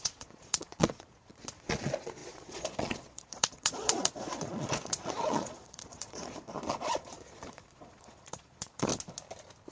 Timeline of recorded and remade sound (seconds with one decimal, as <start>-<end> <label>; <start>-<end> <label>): 0.0-8.9 remade; 8.9-9.7 recorded